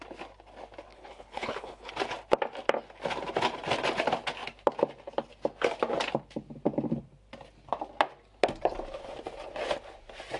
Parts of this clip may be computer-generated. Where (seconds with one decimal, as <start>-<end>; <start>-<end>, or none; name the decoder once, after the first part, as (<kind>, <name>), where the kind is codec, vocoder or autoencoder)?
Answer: 0.9-1.9 (codec, HILCodec)